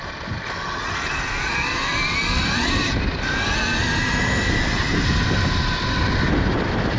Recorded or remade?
recorded